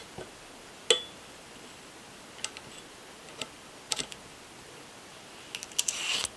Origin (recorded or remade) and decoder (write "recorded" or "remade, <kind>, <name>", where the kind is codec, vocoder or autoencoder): recorded